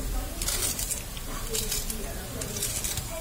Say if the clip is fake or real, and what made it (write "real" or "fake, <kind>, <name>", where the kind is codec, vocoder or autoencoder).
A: real